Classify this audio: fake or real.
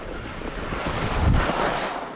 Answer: real